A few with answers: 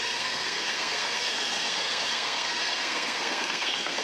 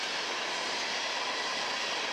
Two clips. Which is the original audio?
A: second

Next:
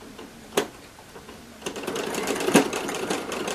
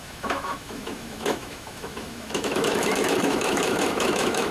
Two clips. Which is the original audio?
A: first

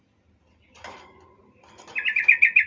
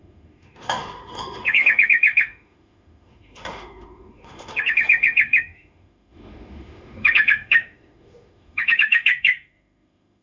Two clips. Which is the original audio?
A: first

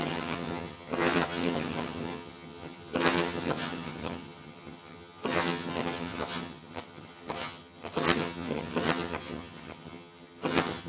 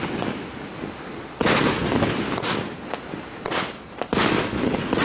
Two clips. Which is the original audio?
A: second